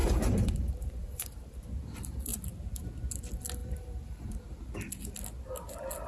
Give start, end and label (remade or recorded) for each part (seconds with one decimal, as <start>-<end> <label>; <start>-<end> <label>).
0.0-1.6 remade; 1.6-3.6 recorded; 3.6-4.4 remade; 4.4-6.1 recorded